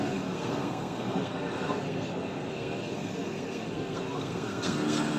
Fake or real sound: fake